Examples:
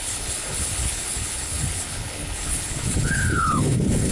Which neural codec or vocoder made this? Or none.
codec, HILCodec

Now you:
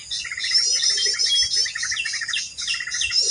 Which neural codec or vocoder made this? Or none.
none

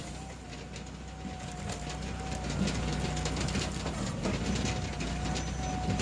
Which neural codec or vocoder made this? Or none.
none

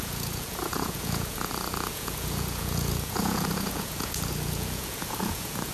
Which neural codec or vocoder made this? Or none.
vocoder, Vocos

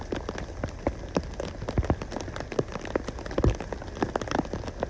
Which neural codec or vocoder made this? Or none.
none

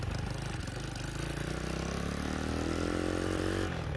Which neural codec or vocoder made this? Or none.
none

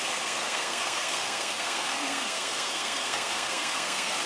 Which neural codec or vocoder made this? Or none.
codec, SNAC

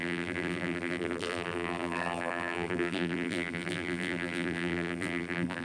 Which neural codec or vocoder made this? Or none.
vocoder, BigVGAN v2